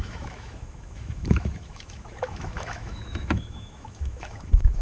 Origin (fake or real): fake